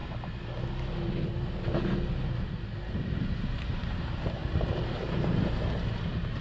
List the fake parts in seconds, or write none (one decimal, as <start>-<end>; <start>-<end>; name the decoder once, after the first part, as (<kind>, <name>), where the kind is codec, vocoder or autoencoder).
3.4-4.4 (vocoder, BigVGAN v2); 5.0-6.4